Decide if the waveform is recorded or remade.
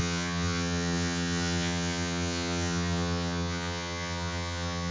remade